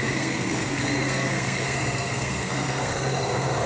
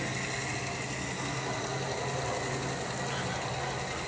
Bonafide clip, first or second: second